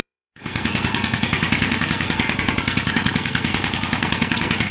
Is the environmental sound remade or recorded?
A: remade